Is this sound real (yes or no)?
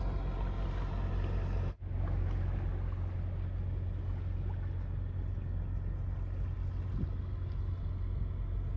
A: yes